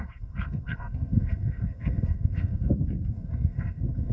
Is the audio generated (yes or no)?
yes